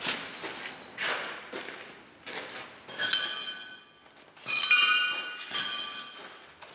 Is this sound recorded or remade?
recorded